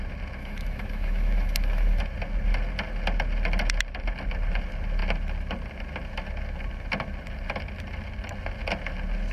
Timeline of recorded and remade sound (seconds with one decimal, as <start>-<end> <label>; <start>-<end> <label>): 0.0-0.4 recorded; 0.4-2.0 remade; 2.0-9.3 recorded